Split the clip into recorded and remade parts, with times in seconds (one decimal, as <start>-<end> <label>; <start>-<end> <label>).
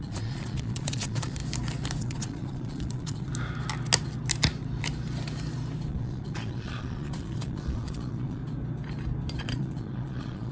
0.0-1.4 remade; 1.4-2.0 recorded; 2.0-3.3 remade; 3.3-5.9 recorded; 5.9-8.4 remade; 8.4-9.4 recorded; 9.4-10.5 remade